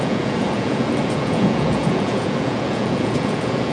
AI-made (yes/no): yes